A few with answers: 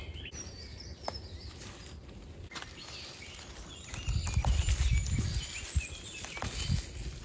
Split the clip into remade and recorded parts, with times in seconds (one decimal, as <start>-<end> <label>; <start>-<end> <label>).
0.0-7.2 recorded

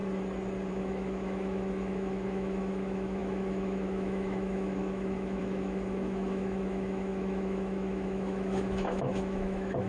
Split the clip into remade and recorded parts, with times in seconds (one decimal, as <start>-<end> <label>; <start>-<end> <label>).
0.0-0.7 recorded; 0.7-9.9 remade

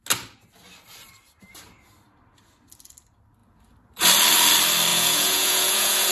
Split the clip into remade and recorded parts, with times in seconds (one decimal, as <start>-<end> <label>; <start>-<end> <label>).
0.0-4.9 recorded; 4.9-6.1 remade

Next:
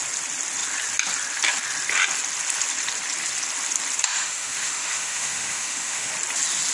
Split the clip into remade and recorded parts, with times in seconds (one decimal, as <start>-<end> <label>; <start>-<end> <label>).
0.0-4.1 recorded; 4.1-6.1 remade; 6.1-6.7 recorded